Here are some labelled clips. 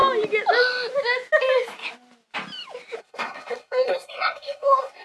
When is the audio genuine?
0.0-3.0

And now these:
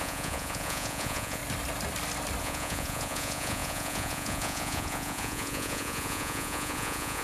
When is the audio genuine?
1.4-2.4

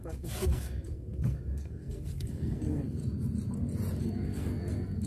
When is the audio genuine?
3.0-4.0

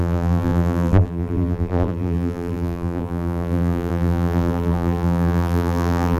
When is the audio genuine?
none

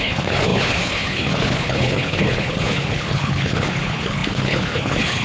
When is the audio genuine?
none

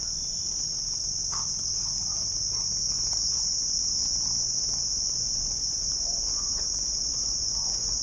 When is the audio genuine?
0.4-4.9

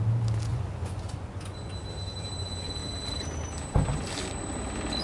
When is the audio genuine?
0.0-0.5; 1.7-5.0

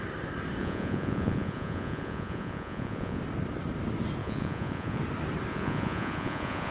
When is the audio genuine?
0.0-0.6; 3.2-4.2; 5.0-5.5